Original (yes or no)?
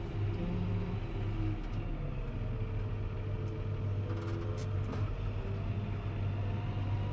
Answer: yes